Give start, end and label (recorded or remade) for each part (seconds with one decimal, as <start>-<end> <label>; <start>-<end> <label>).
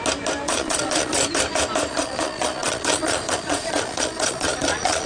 0.0-0.5 recorded; 0.5-1.2 remade; 1.2-1.9 recorded; 1.9-5.1 remade